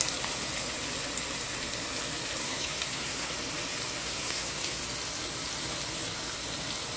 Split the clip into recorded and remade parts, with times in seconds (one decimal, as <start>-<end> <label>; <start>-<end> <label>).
0.0-2.4 recorded; 2.4-3.3 remade; 3.3-4.0 recorded; 4.0-4.8 remade; 4.8-7.0 recorded